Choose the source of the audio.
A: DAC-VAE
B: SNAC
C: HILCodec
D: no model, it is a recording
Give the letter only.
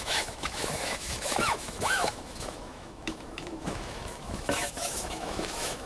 A